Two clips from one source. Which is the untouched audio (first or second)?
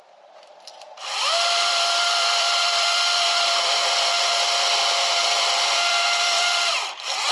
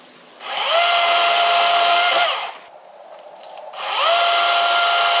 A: second